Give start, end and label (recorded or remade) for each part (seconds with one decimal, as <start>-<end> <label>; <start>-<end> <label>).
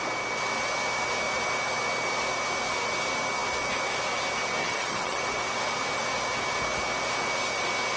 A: 0.0-4.6 recorded; 4.6-5.2 remade; 5.2-8.0 recorded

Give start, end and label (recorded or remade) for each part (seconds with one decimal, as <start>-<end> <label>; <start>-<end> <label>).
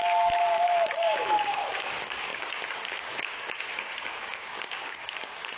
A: 0.0-5.6 remade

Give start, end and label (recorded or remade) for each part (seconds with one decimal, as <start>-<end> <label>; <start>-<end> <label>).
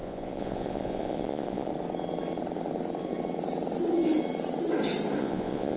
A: 0.0-1.7 remade; 1.7-5.2 recorded; 5.2-5.8 remade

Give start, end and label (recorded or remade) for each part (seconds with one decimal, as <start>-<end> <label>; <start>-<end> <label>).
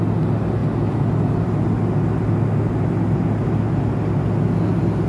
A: 0.0-5.1 recorded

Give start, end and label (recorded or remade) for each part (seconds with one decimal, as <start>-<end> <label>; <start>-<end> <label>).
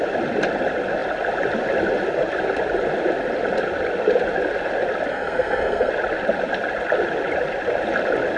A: 0.0-5.1 recorded; 5.1-5.9 remade; 5.9-8.4 recorded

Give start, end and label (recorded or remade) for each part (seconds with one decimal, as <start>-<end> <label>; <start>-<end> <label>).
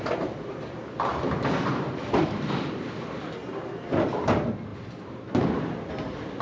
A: 0.0-6.4 recorded